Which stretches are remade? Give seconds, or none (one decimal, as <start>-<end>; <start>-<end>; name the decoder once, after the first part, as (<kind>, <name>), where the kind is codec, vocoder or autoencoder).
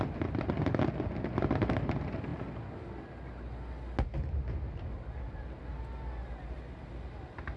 none